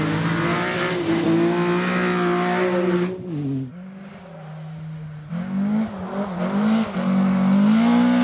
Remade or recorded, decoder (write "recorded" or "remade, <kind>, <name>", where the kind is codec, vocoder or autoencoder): recorded